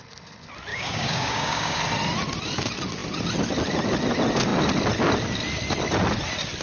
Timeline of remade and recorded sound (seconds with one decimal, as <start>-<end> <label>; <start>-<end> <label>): 0.0-0.7 recorded; 0.7-1.8 remade; 1.8-6.6 recorded